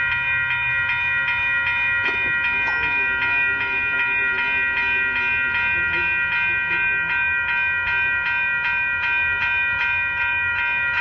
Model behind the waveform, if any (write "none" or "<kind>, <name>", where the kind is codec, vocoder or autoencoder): none